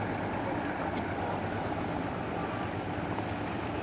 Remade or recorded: recorded